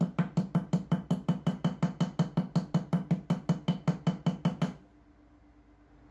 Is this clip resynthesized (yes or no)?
no